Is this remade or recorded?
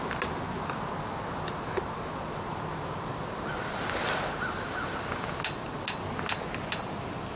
recorded